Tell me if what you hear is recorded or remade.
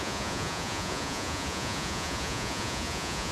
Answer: remade